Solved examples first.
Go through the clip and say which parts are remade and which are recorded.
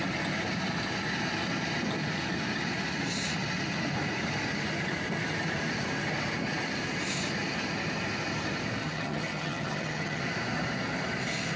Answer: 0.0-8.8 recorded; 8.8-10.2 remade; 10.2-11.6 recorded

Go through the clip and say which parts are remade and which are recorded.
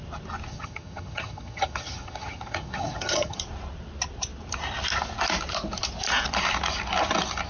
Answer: 0.0-0.5 recorded; 0.5-3.4 remade; 3.4-7.5 recorded